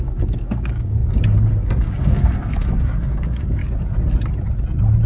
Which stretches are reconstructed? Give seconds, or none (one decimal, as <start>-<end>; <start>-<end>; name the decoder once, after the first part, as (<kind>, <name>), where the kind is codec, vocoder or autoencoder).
0.0-3.6 (codec, DAC)